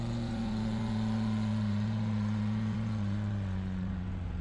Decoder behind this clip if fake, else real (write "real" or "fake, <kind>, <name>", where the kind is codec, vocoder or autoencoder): fake, vocoder, Vocos